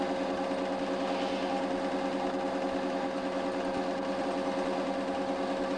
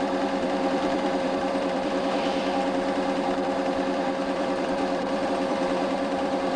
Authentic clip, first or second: first